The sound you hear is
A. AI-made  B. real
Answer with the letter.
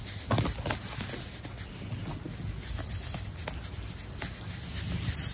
B